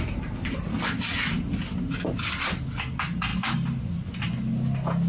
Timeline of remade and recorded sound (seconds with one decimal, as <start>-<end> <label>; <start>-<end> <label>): 0.0-5.1 recorded